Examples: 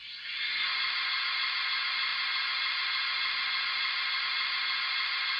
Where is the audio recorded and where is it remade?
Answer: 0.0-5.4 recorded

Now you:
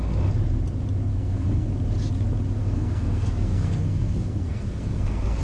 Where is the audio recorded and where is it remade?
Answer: 0.0-1.1 recorded; 1.1-1.7 remade; 1.7-2.6 recorded; 2.6-5.4 remade

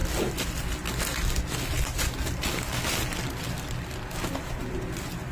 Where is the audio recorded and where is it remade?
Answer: 0.0-5.3 recorded

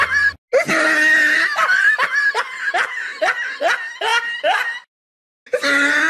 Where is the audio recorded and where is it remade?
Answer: 0.0-1.7 recorded; 1.7-2.4 remade; 2.4-6.1 recorded

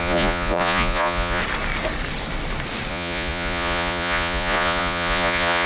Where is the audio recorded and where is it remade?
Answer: 0.0-1.4 remade; 1.4-2.9 recorded; 2.9-5.7 remade

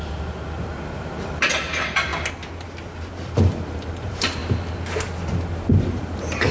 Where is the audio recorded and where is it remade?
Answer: 0.0-2.1 remade; 2.1-3.1 recorded; 3.1-4.4 remade; 4.4-5.7 recorded; 5.7-6.5 remade